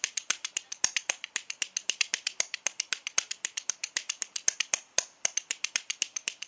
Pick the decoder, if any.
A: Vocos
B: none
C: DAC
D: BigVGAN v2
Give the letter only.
B